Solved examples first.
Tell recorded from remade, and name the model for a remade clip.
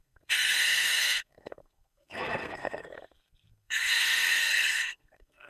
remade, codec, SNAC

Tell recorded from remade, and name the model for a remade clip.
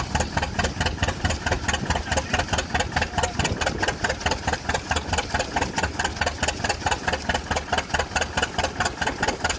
recorded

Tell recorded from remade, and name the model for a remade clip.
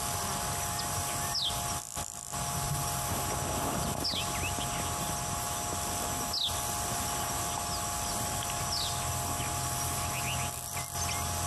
recorded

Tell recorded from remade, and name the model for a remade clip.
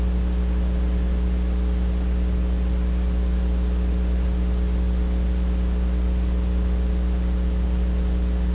recorded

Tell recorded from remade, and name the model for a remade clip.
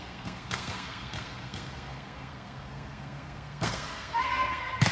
remade, codec, SNAC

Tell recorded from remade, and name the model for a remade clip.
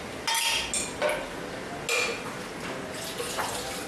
recorded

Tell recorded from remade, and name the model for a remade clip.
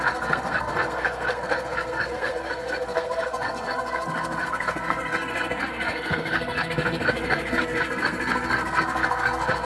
remade, codec, SNAC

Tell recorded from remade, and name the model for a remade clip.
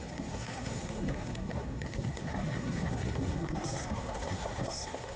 remade, codec, SNAC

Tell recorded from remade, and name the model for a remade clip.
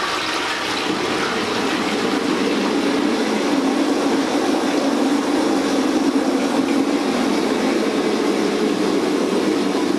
recorded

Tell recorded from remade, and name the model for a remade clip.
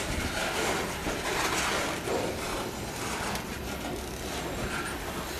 recorded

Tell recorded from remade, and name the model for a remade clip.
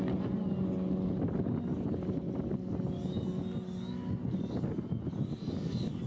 recorded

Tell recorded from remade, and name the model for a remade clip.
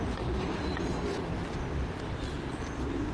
recorded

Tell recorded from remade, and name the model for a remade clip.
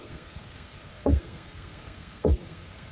remade, codec, SNAC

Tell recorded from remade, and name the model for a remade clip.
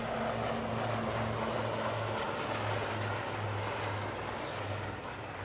recorded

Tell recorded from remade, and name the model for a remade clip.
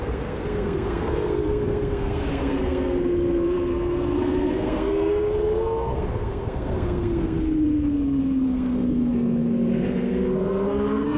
remade, codec, SNAC